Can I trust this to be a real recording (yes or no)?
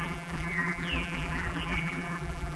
no